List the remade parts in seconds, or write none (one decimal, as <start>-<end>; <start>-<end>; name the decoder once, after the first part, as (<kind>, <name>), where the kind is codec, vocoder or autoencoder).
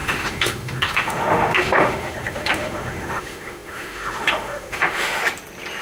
0.0-5.2 (autoencoder, DAC-VAE)